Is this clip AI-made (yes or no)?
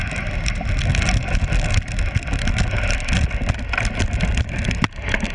no